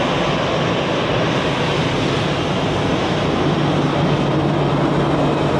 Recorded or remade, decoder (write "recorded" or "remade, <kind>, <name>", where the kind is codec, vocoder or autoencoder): recorded